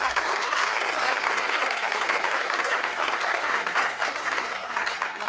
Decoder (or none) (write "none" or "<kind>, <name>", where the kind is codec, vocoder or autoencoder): codec, SNAC